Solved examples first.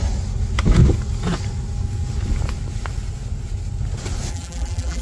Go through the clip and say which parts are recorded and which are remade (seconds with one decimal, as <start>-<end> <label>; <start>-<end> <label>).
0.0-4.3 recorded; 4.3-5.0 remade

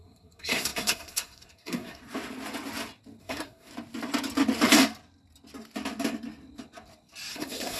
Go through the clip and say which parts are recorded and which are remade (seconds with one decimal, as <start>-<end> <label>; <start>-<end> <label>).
0.0-2.0 remade; 2.0-3.2 recorded; 3.2-3.7 remade; 3.7-7.3 recorded; 7.3-7.8 remade

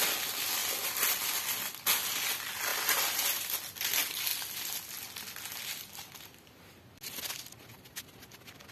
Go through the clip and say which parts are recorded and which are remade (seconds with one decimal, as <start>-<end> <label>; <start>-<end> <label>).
0.0-8.7 recorded

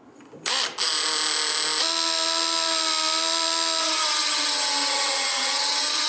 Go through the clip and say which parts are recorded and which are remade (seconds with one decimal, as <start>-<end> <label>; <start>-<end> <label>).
0.0-3.8 recorded; 3.8-6.1 remade

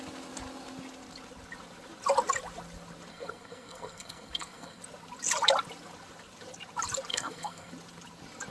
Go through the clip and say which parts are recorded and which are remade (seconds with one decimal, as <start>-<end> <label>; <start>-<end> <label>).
0.0-3.1 recorded; 3.1-4.8 remade; 4.8-7.1 recorded; 7.1-7.7 remade; 7.7-8.5 recorded

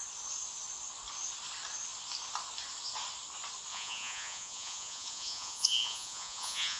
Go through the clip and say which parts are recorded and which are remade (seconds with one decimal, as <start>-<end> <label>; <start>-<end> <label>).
0.0-3.7 recorded; 3.7-6.8 remade

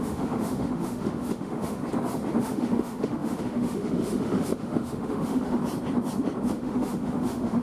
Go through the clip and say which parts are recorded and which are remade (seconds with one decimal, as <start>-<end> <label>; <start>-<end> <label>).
0.0-1.8 remade; 1.8-2.4 recorded; 2.4-5.6 remade; 5.6-6.5 recorded; 6.5-7.6 remade

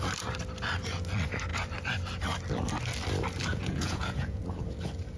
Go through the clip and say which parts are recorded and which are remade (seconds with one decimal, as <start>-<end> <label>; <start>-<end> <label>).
0.0-3.5 recorded; 3.5-4.4 remade; 4.4-5.2 recorded